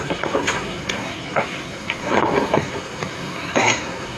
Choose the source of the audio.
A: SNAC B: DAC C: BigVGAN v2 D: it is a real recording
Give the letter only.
A